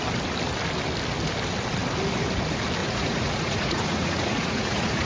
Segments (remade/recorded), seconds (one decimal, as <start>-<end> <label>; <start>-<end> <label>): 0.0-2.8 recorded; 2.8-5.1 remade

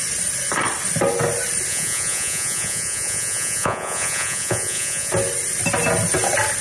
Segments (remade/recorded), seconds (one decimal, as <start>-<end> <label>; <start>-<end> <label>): 0.0-1.7 recorded; 1.7-5.1 remade; 5.1-6.6 recorded

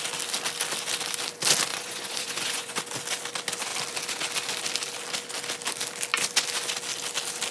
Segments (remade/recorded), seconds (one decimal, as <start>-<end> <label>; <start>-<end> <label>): 0.0-1.7 recorded; 1.7-2.8 remade; 2.8-7.5 recorded

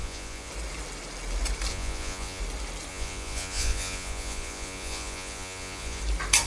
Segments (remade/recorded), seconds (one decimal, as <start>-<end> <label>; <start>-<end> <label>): 0.0-0.5 remade; 0.5-1.7 recorded; 1.7-2.4 remade; 2.4-2.9 recorded; 2.9-6.0 remade; 6.0-6.5 recorded

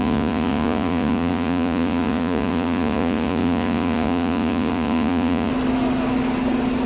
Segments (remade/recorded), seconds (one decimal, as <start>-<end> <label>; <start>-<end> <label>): 0.0-5.5 remade; 5.5-6.9 recorded

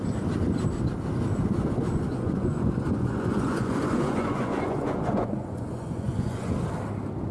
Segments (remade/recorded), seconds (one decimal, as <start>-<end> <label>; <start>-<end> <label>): 0.0-2.1 recorded; 2.1-6.5 remade; 6.5-7.3 recorded

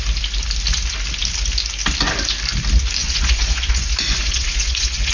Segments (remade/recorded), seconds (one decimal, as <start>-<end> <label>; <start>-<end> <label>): 0.0-3.0 recorded; 3.0-5.1 remade